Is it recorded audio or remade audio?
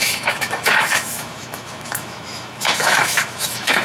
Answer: remade